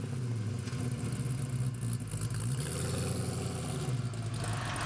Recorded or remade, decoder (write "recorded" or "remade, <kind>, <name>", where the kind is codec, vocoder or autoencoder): recorded